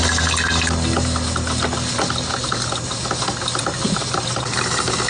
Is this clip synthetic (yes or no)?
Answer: no